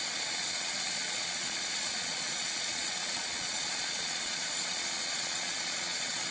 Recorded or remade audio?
remade